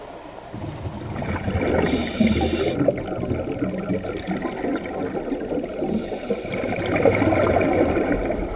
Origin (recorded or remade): recorded